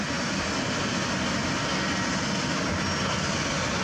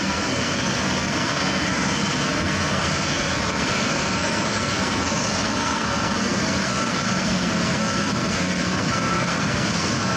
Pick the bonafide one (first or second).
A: first